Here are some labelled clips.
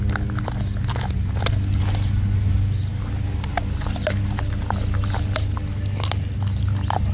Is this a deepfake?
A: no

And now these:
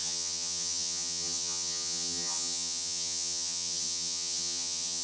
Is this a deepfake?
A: yes